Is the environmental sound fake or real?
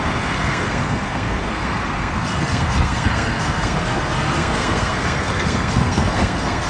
fake